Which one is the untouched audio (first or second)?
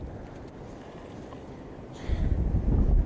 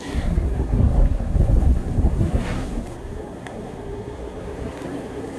first